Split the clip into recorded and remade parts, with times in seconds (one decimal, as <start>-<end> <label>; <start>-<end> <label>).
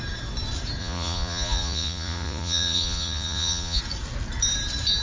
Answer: 0.0-0.8 recorded; 0.8-3.8 remade; 3.8-5.0 recorded